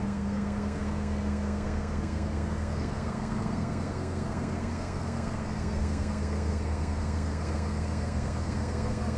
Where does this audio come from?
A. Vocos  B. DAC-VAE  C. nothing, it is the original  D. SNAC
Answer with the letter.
D